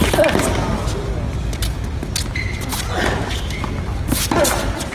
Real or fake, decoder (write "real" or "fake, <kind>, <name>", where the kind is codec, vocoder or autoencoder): real